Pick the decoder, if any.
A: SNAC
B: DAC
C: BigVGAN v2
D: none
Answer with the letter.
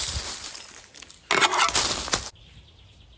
D